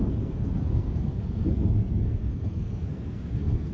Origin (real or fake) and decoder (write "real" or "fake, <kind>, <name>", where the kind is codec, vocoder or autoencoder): fake, codec, SNAC